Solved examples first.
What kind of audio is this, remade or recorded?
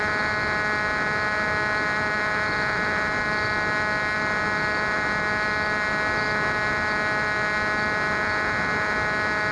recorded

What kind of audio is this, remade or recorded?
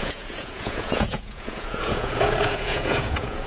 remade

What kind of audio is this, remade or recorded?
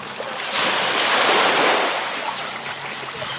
remade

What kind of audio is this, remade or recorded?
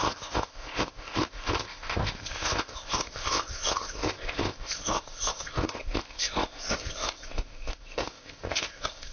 remade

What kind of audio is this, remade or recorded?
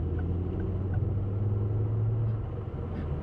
recorded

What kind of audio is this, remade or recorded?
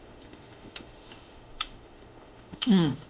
remade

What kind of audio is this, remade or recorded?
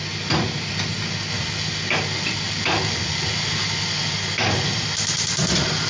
recorded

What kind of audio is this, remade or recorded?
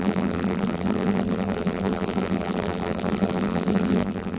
remade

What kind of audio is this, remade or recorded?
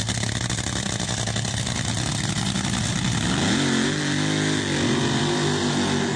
recorded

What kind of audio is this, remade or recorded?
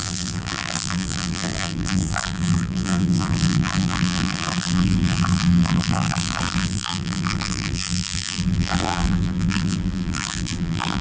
remade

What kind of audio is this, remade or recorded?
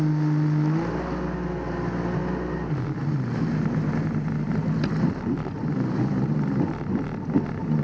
recorded